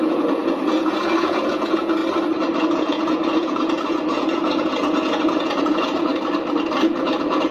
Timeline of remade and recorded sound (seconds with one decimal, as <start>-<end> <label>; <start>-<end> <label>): 0.0-2.0 remade; 2.0-2.6 recorded; 2.6-6.1 remade; 6.1-7.0 recorded; 7.0-7.5 remade